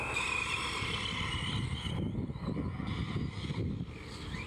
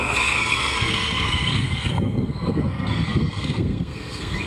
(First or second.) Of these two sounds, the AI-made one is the second